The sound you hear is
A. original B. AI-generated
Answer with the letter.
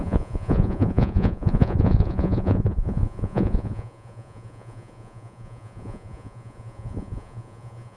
B